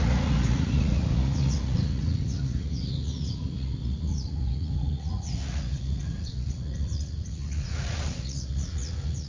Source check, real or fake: fake